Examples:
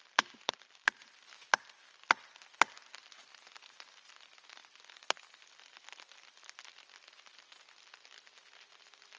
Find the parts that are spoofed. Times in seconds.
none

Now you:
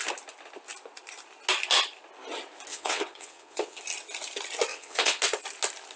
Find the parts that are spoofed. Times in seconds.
2.7-3.8 (vocoder, WaveNeXt); 4.7-5.2

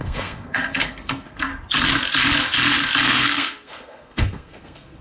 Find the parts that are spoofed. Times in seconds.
0.0-1.5 (codec, SNAC); 3.0-5.0

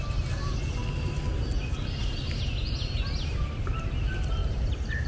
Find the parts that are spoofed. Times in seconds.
4.4-5.1 (vocoder, BigVGAN v2)